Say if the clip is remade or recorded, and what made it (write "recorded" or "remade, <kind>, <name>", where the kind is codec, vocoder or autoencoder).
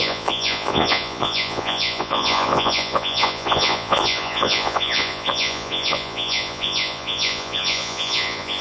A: remade, vocoder, Vocos